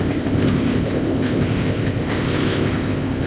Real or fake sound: fake